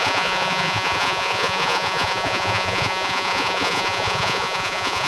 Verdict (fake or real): fake